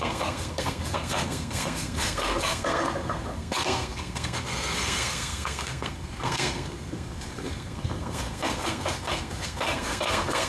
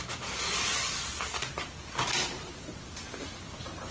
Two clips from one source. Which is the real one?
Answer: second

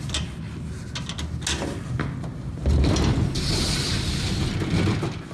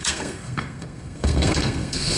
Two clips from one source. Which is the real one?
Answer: first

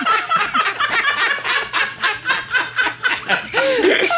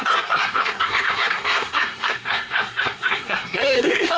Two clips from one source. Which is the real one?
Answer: first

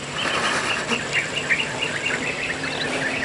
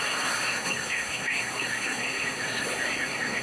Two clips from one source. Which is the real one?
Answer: first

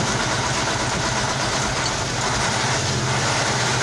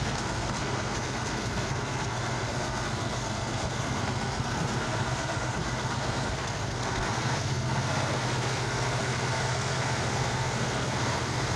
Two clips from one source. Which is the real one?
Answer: first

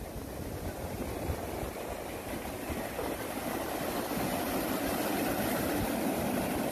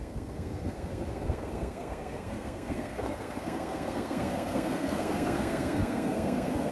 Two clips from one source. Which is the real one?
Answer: first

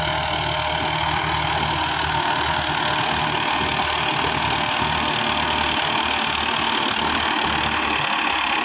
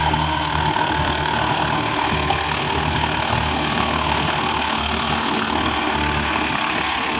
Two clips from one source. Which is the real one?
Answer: first